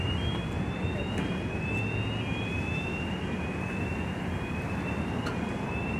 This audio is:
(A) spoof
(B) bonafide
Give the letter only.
B